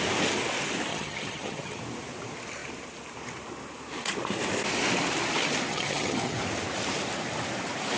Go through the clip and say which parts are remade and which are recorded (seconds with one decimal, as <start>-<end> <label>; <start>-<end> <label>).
0.0-0.9 recorded; 0.9-1.8 remade; 1.8-5.7 recorded; 5.7-6.4 remade; 6.4-8.0 recorded